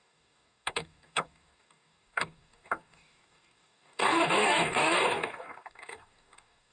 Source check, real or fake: fake